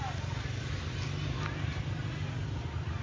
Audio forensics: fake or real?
real